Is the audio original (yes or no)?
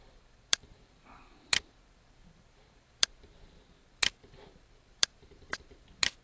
no